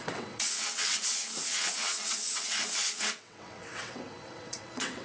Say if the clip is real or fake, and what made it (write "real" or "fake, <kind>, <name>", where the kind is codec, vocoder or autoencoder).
fake, vocoder, WaveNeXt